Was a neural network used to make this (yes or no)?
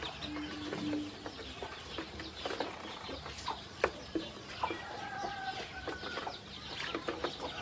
no